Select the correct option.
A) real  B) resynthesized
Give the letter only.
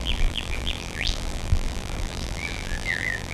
B